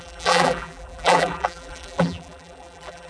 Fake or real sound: fake